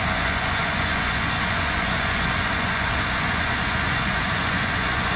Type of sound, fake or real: fake